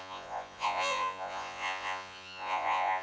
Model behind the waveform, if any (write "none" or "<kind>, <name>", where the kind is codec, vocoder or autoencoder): vocoder, Vocos